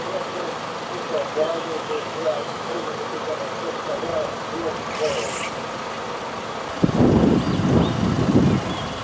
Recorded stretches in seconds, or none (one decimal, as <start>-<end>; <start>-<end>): 0.0-1.5; 2.9-9.0